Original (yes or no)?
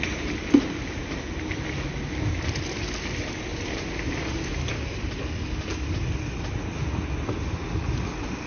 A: yes